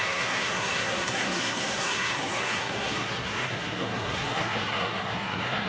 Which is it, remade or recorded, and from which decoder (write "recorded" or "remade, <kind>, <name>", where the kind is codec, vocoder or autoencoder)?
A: remade, codec, SNAC